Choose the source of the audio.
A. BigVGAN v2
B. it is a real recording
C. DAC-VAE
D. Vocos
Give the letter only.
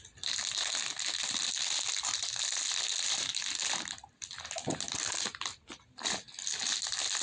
B